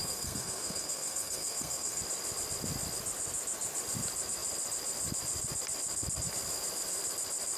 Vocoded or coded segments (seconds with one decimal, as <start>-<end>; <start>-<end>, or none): 0.0-2.0